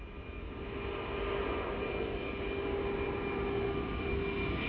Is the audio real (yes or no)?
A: yes